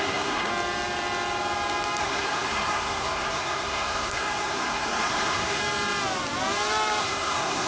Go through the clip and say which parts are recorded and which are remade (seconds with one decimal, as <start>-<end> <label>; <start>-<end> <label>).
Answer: 0.0-0.5 remade; 0.5-2.0 recorded; 2.0-5.6 remade; 5.6-7.0 recorded; 7.0-7.7 remade